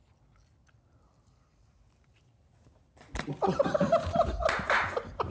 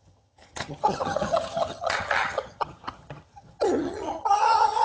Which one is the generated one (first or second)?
second